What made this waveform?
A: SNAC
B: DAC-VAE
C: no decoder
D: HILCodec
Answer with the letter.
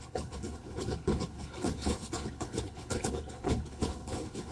D